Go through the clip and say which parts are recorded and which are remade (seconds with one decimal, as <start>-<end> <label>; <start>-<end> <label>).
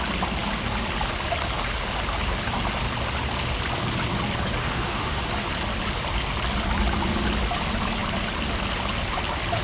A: 0.0-4.6 recorded; 4.6-5.2 remade; 5.2-9.6 recorded